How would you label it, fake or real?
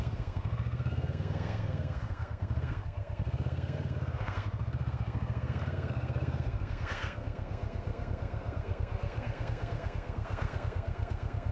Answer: fake